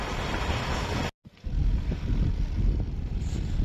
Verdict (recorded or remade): recorded